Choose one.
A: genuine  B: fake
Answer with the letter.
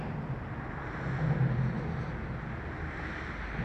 A